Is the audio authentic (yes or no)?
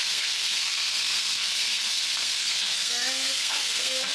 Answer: no